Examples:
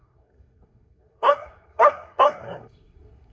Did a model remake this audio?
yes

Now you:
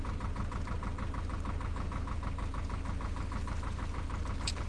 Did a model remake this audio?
no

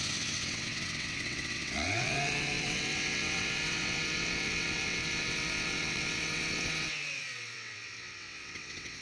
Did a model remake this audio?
yes